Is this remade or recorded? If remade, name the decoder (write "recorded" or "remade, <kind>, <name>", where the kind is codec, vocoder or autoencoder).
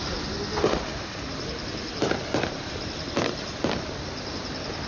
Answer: recorded